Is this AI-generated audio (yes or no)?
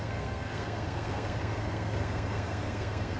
yes